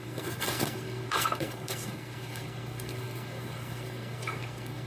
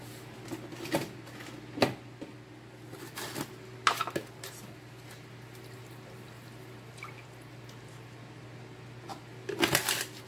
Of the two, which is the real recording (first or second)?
second